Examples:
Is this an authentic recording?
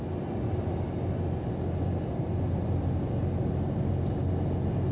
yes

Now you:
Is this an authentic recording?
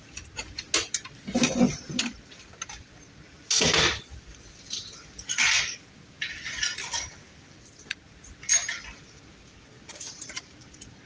yes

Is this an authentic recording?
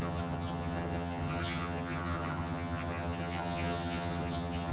no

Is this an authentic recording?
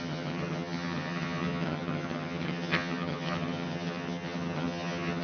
no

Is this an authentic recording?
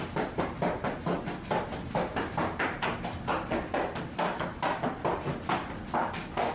yes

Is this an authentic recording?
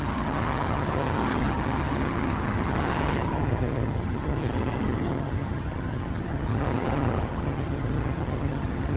no